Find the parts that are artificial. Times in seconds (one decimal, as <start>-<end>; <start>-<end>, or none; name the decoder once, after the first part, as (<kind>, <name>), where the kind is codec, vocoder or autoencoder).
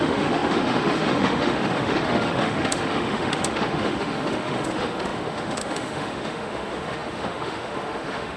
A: 0.0-8.4 (autoencoder, DAC-VAE)